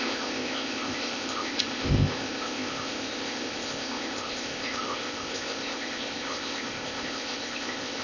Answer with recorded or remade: remade